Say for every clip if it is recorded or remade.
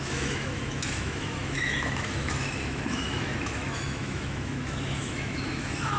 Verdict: remade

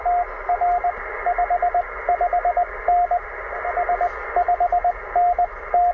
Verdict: recorded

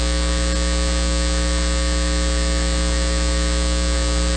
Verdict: recorded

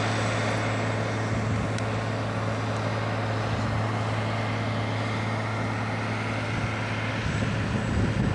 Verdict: recorded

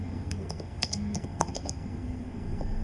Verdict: remade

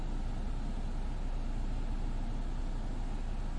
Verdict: recorded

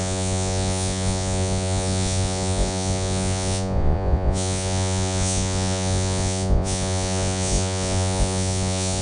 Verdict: remade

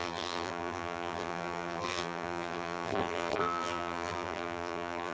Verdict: remade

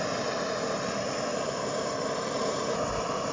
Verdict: recorded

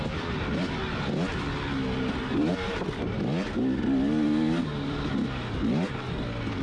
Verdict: recorded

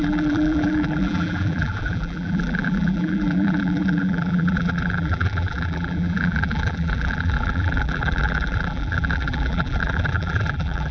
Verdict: remade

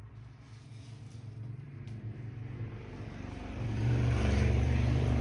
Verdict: remade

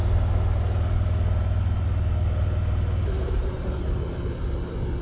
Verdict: recorded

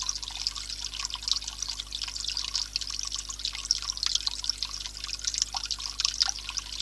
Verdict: recorded